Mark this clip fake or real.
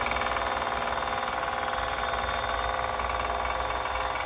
real